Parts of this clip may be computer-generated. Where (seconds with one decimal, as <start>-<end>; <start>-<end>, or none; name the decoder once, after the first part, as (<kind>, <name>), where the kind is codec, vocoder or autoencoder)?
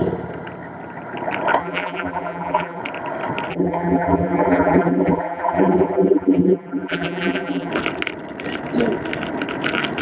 1.6-2.8 (vocoder, BigVGAN v2); 3.5-7.7